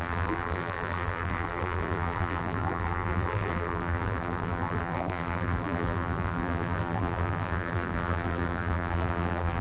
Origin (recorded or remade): remade